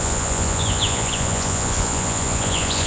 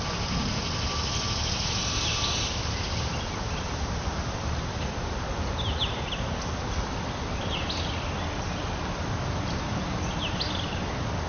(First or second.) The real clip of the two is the second